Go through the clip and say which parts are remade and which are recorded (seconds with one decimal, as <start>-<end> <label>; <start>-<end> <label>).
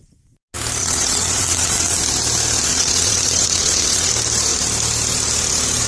0.0-0.8 recorded; 0.8-2.0 remade; 2.0-2.7 recorded; 2.7-4.1 remade; 4.1-5.9 recorded